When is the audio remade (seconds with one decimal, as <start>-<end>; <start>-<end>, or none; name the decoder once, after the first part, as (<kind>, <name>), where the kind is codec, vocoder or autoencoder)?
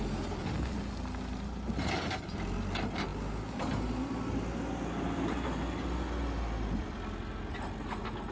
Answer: none